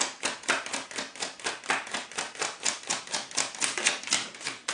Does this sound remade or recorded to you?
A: recorded